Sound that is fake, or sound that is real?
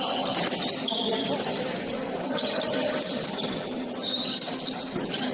fake